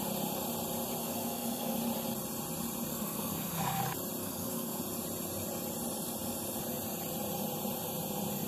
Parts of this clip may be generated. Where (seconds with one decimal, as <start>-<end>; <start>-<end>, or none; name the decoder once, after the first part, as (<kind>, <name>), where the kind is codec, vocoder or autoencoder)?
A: 1.0-1.8 (codec, SNAC); 2.9-3.8; 4.2-4.8